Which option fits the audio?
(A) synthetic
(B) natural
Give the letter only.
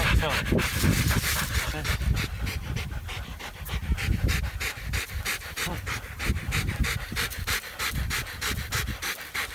A